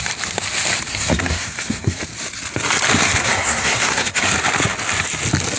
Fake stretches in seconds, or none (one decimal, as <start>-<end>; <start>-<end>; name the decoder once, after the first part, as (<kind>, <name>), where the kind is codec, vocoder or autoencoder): 0.9-2.0 (codec, SNAC); 3.2-4.2